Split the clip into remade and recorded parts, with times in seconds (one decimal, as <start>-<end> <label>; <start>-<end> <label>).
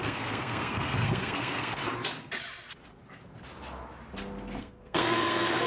0.0-1.8 remade; 1.8-4.6 recorded; 4.6-5.7 remade